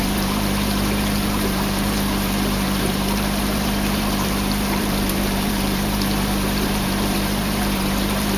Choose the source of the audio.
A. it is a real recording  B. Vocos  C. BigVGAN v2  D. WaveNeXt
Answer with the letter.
C